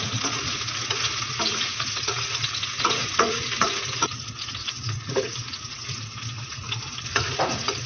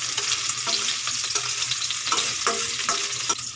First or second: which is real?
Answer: second